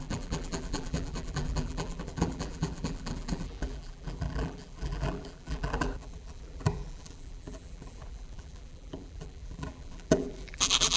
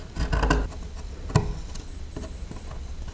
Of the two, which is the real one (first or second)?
second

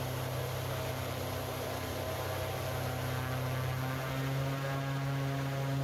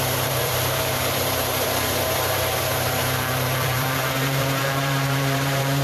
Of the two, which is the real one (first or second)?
first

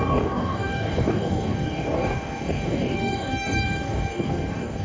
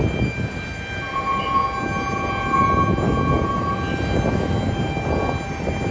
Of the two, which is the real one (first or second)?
second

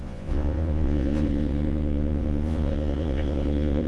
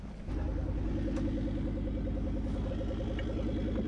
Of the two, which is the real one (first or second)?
second